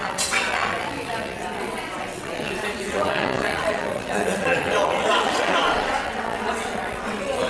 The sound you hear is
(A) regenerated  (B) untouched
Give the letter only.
A